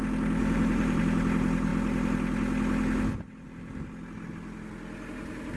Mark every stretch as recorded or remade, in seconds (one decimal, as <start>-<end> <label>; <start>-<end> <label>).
0.0-0.4 recorded; 0.4-1.0 remade; 1.0-5.6 recorded